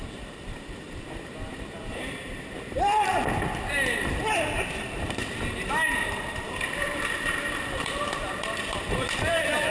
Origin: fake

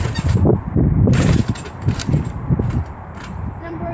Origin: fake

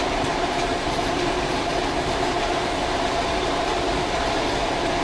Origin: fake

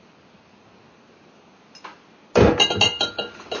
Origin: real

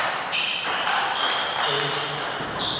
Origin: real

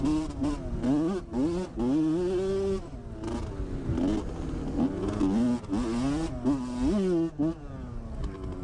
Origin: real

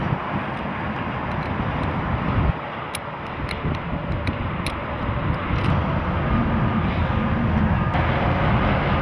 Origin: real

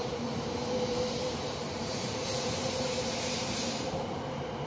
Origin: fake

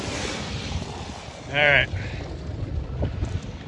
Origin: fake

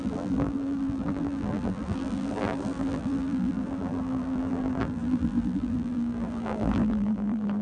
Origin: fake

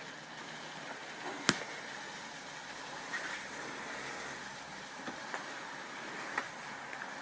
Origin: real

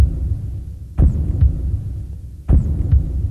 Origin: real